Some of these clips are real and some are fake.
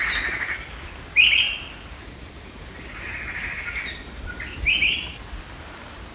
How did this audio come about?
real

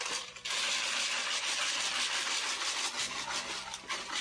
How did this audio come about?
real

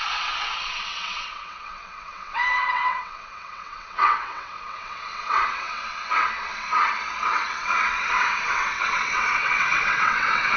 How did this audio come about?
fake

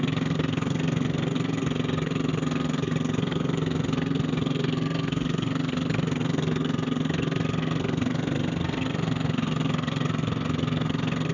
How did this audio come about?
fake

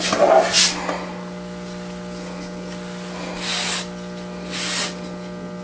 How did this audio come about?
real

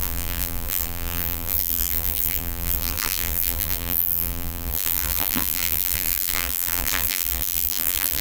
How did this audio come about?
fake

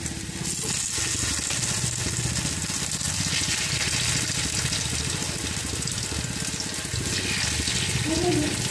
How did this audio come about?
real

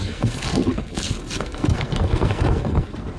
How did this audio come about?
fake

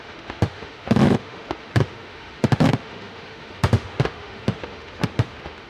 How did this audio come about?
fake